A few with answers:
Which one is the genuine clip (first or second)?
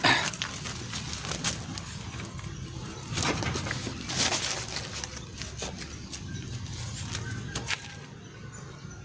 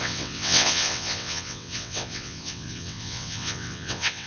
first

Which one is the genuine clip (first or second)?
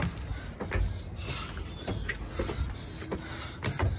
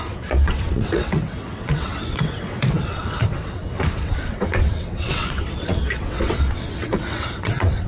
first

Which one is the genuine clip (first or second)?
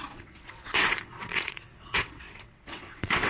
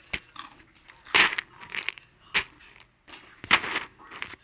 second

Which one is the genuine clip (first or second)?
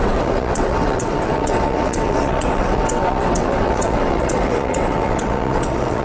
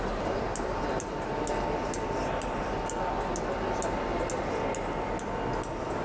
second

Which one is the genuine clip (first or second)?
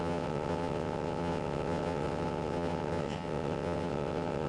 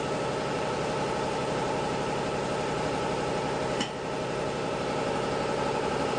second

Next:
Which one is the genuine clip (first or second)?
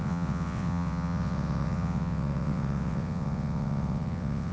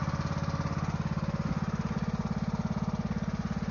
second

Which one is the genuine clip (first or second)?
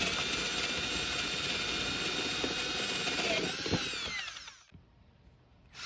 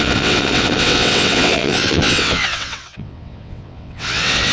first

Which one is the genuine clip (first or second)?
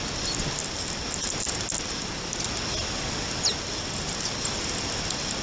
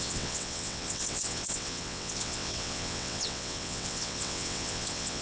first